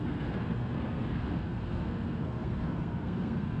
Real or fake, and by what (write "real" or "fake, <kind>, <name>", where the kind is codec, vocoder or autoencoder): fake, codec, SNAC